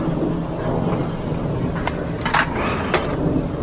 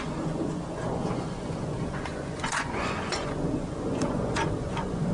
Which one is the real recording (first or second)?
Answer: first